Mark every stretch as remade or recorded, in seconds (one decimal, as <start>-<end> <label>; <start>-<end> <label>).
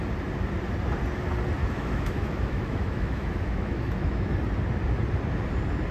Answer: 0.0-1.6 recorded; 1.6-4.3 remade; 4.3-5.9 recorded